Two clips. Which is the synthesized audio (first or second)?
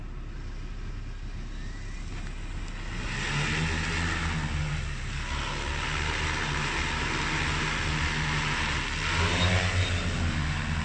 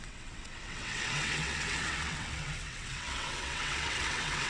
second